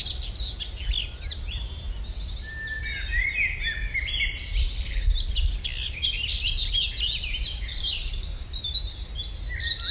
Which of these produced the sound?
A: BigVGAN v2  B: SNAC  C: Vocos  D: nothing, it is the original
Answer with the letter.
D